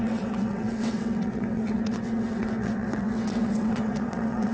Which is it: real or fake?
fake